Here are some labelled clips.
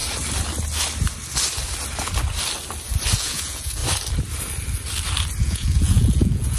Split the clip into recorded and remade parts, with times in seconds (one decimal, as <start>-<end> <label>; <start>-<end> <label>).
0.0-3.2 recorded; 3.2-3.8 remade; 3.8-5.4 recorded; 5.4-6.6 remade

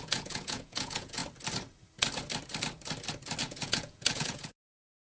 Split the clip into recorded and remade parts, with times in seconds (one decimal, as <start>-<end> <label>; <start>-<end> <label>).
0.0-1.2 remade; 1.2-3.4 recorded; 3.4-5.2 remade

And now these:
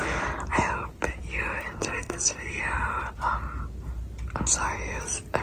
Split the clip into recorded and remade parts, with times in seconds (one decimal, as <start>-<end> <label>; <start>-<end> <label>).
0.0-1.8 recorded; 1.8-2.6 remade; 2.6-5.4 recorded

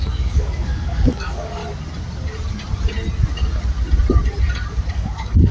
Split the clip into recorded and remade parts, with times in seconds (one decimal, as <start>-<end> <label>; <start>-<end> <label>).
0.0-1.6 remade; 1.6-4.9 recorded; 4.9-5.5 remade